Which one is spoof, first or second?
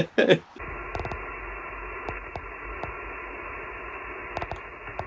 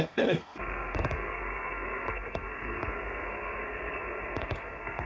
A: second